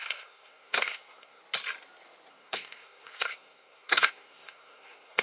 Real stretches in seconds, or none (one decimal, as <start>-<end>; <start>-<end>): 1.4-2.3